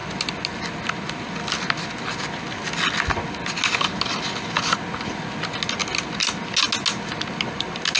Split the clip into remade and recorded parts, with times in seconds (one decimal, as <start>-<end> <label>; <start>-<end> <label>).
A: 0.0-8.0 recorded